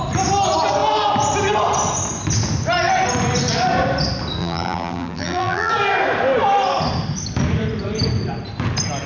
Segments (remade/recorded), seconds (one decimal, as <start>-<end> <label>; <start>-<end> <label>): 0.0-4.4 recorded; 4.4-5.7 remade; 5.7-9.1 recorded